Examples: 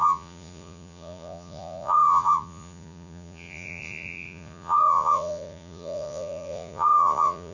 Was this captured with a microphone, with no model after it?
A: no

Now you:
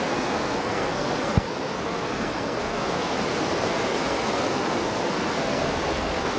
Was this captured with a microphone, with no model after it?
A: no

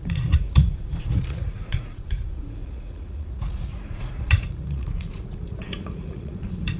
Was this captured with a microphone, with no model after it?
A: no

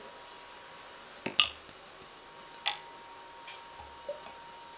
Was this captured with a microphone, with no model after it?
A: yes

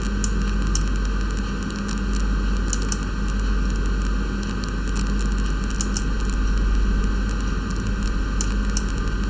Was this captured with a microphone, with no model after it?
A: yes